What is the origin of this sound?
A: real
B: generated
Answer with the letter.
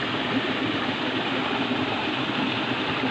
A